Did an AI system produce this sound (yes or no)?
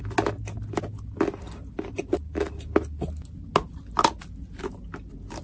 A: no